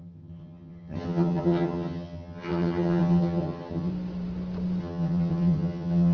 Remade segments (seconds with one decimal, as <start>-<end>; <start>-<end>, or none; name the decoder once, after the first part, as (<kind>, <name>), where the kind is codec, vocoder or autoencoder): 0.0-3.9 (vocoder, HiFi-GAN); 4.8-6.1